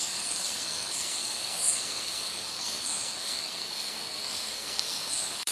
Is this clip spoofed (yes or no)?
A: yes